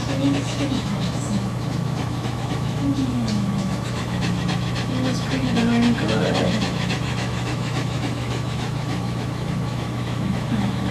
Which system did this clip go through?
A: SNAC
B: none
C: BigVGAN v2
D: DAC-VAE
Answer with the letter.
D